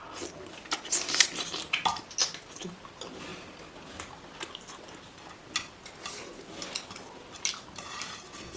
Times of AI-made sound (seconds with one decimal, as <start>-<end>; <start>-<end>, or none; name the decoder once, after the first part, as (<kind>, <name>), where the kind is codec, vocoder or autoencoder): none